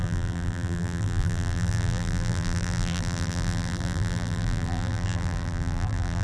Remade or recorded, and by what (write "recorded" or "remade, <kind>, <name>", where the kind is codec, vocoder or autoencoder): remade, vocoder, BigVGAN v2